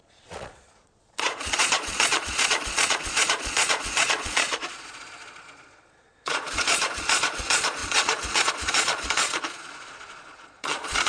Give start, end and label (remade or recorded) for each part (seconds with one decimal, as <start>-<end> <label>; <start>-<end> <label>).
0.0-11.1 remade